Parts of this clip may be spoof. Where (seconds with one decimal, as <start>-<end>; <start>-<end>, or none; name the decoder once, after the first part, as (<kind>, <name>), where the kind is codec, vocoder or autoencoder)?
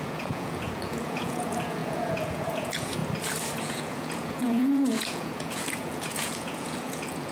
0.0-3.0 (vocoder, Vocos); 3.6-7.3